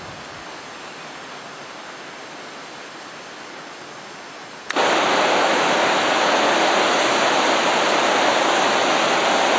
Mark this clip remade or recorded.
recorded